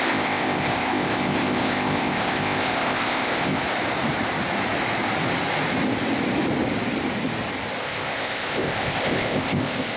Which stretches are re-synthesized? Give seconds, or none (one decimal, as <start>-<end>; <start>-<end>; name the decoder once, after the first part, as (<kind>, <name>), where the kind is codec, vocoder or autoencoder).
0.0-3.6 (codec, ZipCodec); 7.8-10.0